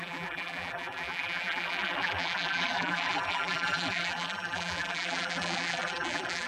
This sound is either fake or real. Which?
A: fake